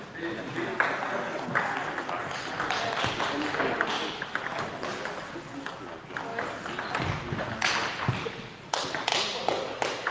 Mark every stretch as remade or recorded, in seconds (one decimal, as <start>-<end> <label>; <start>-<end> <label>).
0.0-10.1 recorded